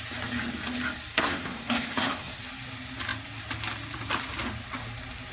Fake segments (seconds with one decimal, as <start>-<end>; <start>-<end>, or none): 1.1-2.4